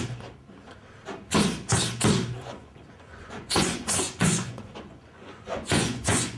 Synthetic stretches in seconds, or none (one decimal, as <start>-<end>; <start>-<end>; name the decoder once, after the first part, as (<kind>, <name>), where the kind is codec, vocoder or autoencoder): 2.4-6.4 (vocoder, Vocos)